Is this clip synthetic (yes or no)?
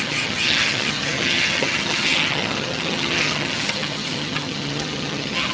yes